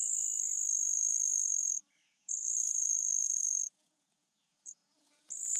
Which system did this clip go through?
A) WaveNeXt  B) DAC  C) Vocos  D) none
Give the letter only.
C